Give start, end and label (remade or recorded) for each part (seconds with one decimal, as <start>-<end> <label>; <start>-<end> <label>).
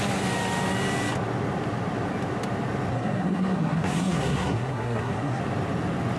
0.0-2.9 recorded; 2.9-5.4 remade; 5.4-6.2 recorded